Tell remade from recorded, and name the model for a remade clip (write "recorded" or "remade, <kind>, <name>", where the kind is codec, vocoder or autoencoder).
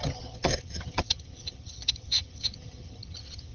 remade, vocoder, HiFi-GAN